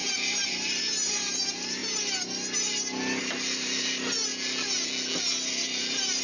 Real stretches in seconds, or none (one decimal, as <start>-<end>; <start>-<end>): 1.8-3.2; 4.3-5.5